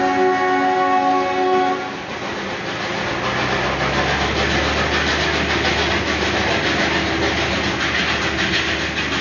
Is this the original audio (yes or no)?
yes